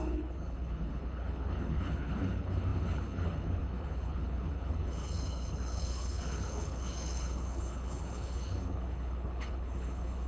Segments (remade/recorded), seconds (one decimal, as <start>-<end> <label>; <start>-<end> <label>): 0.0-10.3 remade